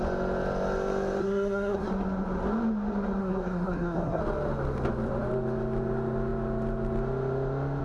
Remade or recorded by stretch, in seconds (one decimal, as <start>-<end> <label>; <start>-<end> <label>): 0.0-1.2 recorded; 1.2-1.9 remade; 1.9-3.2 recorded; 3.2-4.2 remade; 4.2-7.8 recorded